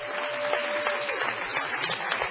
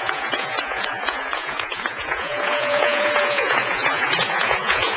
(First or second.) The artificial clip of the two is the second